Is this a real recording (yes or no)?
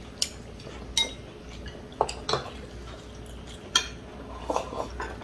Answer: yes